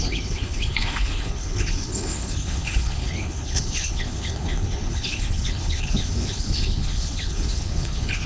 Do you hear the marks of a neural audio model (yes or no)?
yes